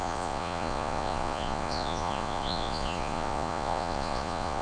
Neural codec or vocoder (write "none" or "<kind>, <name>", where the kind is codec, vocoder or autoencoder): vocoder, Vocos